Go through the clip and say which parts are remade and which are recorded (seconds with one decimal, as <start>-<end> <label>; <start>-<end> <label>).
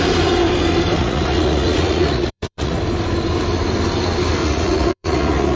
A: 0.0-1.0 recorded; 1.0-2.8 remade; 2.8-4.4 recorded; 4.4-5.6 remade